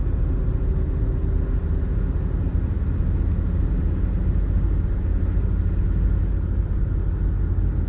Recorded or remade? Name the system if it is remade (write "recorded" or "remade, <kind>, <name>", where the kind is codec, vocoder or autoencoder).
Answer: recorded